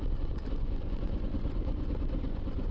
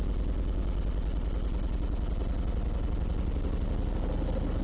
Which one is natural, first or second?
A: second